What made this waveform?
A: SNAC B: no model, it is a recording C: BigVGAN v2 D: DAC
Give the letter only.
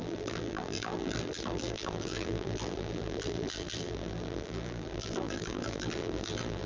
C